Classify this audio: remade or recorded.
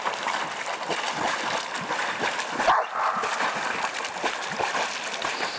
recorded